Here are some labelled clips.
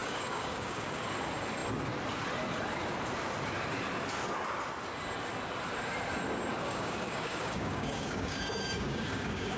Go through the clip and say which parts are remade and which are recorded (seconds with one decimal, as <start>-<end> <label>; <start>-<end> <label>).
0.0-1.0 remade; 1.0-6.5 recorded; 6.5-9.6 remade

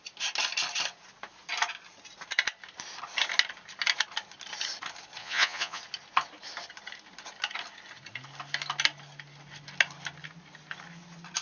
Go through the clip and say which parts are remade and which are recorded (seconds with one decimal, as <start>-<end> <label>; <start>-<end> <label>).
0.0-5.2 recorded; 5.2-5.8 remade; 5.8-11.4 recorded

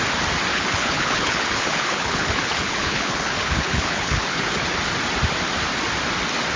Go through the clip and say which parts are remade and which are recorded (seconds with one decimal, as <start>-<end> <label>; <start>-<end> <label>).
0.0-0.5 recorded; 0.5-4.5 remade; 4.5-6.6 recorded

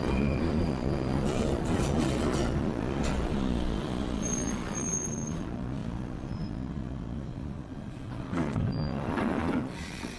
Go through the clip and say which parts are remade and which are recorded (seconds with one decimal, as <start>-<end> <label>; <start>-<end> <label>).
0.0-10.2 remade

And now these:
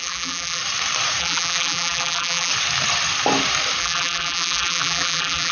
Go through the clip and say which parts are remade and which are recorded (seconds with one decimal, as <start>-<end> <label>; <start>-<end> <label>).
0.0-0.6 remade; 0.6-1.2 recorded; 1.2-2.5 remade; 2.5-3.8 recorded; 3.8-5.5 remade

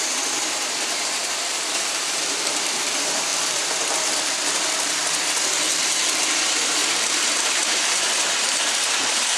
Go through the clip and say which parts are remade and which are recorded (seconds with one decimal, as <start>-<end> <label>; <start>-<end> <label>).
0.0-3.3 remade; 3.3-6.2 recorded; 6.2-9.4 remade